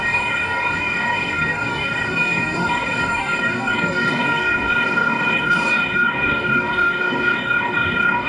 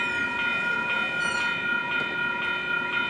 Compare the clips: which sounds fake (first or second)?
first